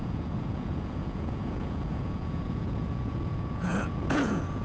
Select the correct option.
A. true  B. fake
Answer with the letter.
B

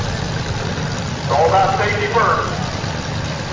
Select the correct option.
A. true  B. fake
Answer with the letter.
A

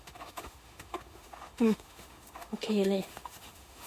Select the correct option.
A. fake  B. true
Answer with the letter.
A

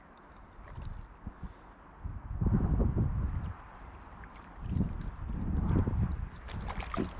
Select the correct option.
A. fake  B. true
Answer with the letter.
B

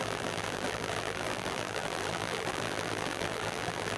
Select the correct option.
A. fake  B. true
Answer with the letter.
A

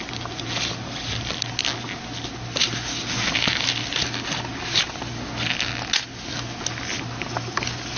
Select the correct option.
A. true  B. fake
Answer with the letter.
A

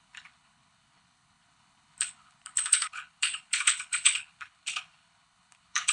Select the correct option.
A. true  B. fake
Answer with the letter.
B